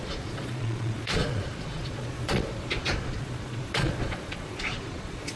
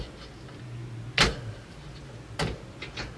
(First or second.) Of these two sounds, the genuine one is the second